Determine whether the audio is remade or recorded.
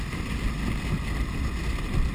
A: recorded